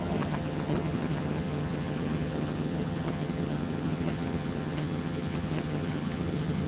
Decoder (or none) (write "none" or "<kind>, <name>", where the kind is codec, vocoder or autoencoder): vocoder, HiFi-GAN